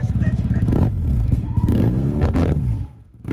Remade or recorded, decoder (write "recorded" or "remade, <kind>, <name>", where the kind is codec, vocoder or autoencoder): remade, codec, SNAC